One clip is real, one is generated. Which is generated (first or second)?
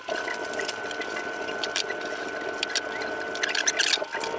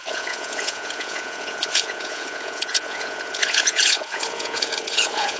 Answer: second